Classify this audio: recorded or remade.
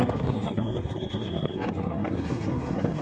remade